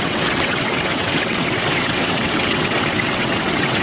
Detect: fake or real fake